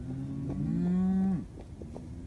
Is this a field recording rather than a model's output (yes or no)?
yes